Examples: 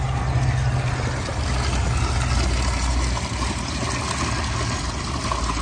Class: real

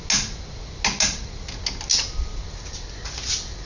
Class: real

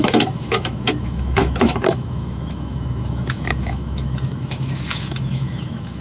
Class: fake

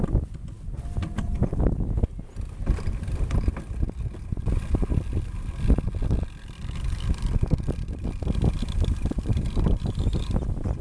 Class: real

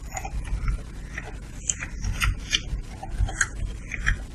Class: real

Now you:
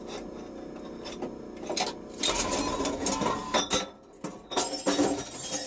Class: real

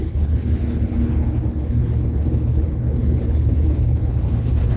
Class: fake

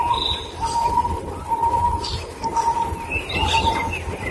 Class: real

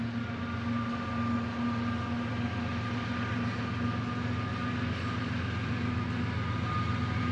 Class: real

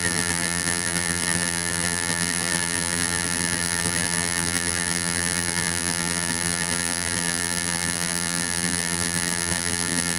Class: fake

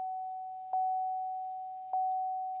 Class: real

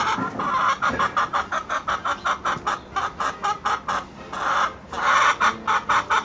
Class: real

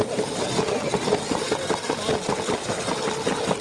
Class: real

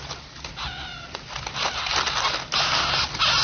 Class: real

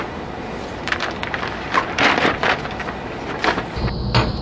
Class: real